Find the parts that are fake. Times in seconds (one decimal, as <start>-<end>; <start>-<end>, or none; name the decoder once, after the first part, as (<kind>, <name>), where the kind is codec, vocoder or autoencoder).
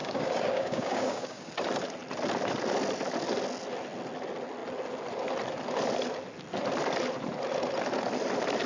0.0-1.5 (codec, DAC)